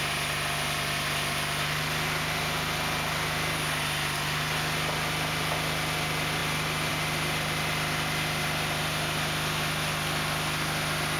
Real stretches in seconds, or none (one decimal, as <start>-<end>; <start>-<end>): 0.0-11.2